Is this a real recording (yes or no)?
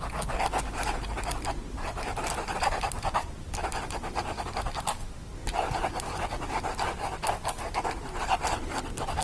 yes